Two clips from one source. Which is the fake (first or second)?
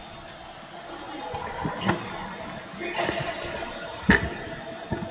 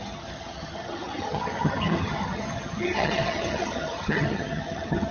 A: second